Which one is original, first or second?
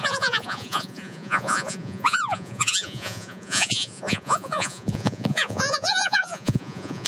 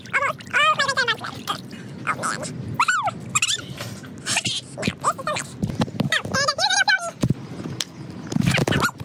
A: second